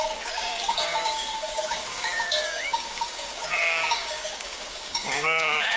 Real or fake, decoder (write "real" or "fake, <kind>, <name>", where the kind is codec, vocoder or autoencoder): fake, codec, DAC